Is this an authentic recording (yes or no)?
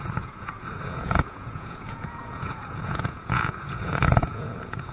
no